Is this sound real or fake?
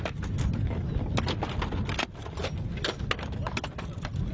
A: real